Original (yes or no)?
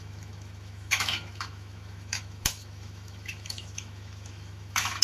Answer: no